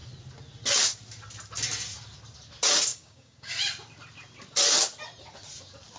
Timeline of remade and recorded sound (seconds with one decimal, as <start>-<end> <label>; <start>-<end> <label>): 0.0-2.9 recorded; 2.9-3.5 remade; 3.5-6.0 recorded